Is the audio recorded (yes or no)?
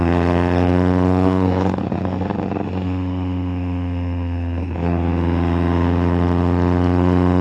no